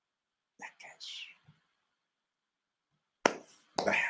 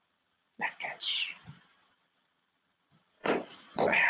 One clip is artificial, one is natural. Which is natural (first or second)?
first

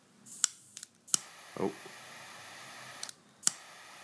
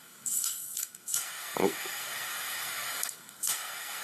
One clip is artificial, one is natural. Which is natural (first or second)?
first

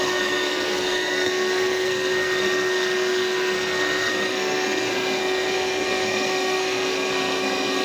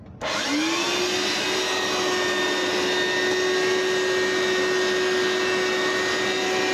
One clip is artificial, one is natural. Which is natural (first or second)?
second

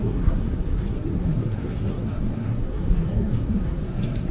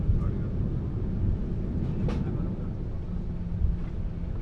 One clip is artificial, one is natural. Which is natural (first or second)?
second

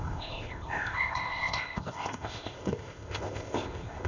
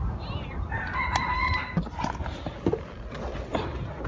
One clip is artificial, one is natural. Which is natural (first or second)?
second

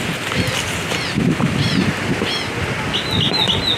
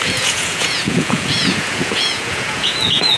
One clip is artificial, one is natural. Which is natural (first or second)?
first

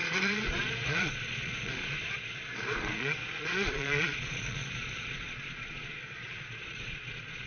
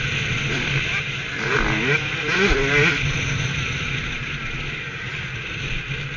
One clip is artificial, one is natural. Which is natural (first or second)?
second